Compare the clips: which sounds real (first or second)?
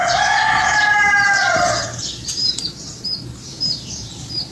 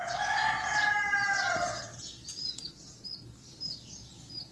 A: second